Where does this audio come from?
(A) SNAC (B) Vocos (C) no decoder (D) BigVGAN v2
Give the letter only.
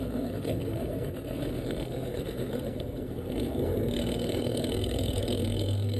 A